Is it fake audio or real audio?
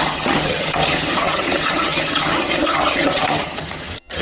fake